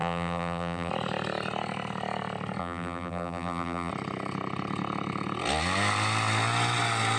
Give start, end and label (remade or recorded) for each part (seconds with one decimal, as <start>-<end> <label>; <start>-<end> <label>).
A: 0.0-0.9 remade; 0.9-2.6 recorded; 2.6-3.9 remade; 3.9-7.2 recorded